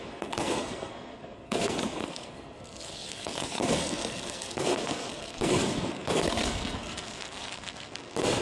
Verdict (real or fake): fake